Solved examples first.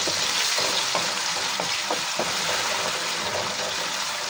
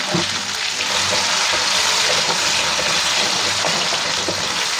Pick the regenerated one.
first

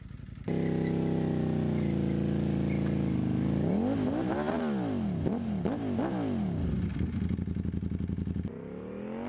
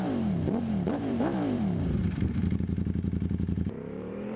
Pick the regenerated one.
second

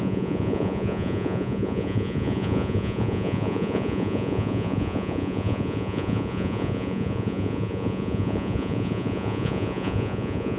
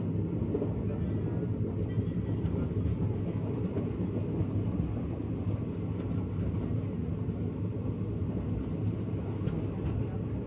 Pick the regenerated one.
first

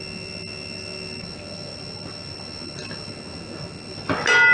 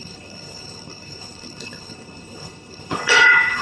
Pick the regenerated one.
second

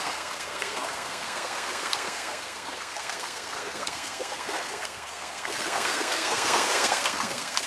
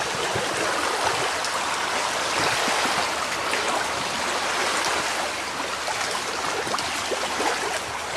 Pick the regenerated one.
first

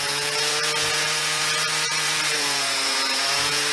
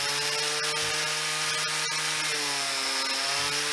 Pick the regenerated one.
first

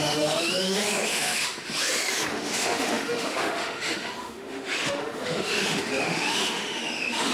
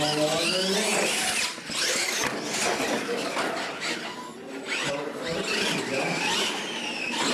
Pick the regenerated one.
first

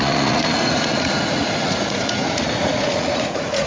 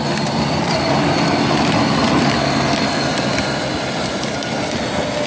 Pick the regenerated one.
first